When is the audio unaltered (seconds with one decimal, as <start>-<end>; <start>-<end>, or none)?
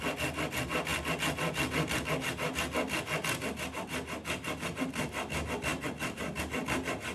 0.0-7.1